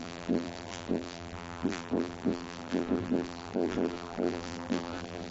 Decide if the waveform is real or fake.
fake